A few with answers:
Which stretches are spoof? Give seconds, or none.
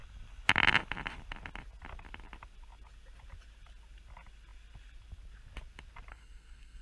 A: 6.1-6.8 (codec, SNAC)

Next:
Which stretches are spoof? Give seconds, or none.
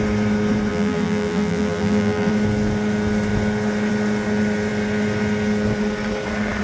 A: 0.7-2.3 (vocoder, BigVGAN v2)